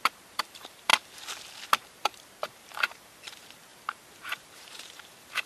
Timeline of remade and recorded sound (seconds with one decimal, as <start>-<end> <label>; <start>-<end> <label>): 0.0-0.9 remade; 0.9-1.9 recorded; 1.9-5.5 remade